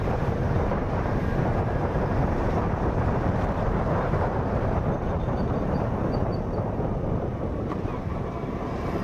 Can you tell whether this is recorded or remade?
remade